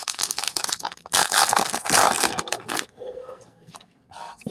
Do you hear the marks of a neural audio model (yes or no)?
yes